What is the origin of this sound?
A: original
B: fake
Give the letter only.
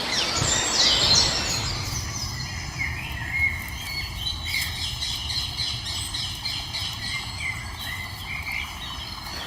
A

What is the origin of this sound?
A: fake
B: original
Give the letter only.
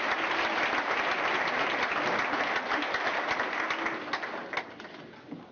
B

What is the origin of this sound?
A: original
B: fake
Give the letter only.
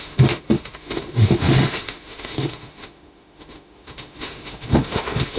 B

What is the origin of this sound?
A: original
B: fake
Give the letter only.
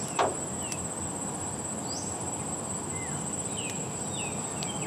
A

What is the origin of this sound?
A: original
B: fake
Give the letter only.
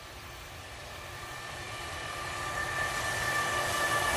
A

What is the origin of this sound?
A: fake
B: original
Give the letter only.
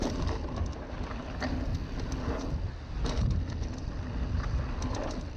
B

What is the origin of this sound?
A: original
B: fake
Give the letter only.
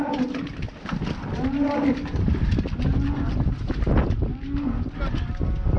A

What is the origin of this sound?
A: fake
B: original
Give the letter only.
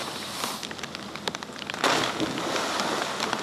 B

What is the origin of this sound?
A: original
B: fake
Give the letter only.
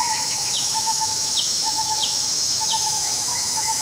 B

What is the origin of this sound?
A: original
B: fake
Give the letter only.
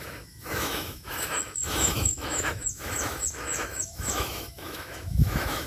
B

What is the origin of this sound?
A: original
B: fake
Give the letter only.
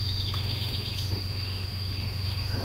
B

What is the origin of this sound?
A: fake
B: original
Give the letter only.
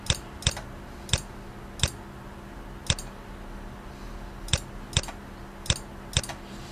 B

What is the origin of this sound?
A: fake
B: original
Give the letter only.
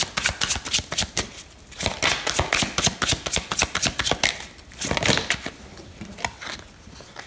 B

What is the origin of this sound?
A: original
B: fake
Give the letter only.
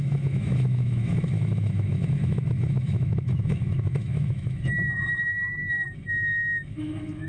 B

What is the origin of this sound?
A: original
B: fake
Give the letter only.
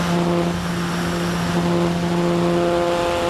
A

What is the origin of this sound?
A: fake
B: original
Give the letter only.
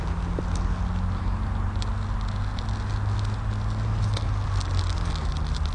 B